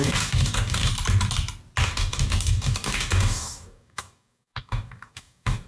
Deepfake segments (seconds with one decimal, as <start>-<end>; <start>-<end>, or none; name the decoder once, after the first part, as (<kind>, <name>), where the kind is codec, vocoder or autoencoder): 0.0-0.9 (codec, DAC); 1.8-5.7